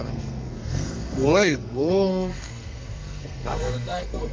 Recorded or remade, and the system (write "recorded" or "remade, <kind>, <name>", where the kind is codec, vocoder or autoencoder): remade, codec, SNAC